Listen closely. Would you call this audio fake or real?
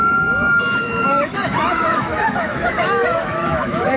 fake